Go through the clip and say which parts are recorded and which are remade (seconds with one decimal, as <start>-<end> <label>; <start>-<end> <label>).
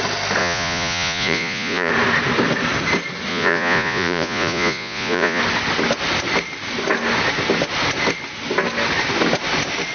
0.0-0.4 recorded; 0.4-1.9 remade; 1.9-3.3 recorded; 3.3-5.4 remade; 5.4-9.9 recorded